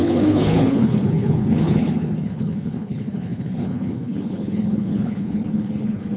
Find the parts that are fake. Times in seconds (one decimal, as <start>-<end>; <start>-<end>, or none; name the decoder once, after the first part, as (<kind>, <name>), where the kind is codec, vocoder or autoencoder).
0.0-6.2 (codec, HILCodec)